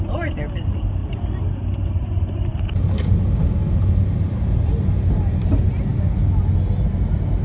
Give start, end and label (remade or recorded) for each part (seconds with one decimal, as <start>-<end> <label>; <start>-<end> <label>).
0.0-7.4 recorded